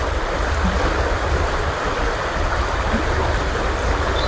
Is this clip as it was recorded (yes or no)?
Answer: yes